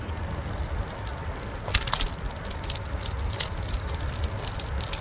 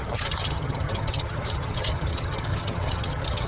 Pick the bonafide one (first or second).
first